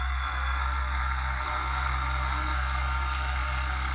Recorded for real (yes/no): no